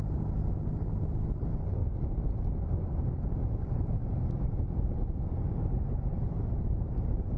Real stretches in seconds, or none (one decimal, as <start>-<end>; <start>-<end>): 1.8-3.6